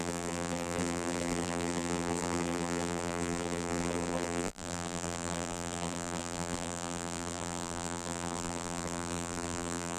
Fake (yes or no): yes